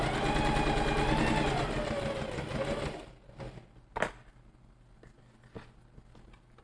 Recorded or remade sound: recorded